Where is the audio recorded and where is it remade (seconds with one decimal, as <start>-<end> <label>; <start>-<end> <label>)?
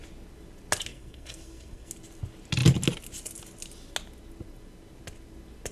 0.0-0.9 recorded; 0.9-1.9 remade; 1.9-5.7 recorded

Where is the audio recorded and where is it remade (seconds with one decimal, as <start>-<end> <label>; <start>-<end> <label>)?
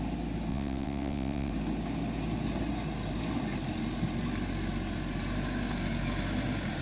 0.0-0.5 recorded; 0.5-1.5 remade; 1.5-6.8 recorded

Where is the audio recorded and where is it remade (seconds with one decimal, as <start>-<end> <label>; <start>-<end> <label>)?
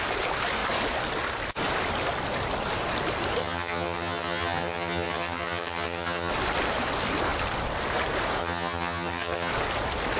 0.0-3.4 recorded; 3.4-6.3 remade; 6.3-8.4 recorded; 8.4-9.5 remade; 9.5-10.2 recorded